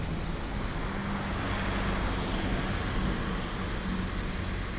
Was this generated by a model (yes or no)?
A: no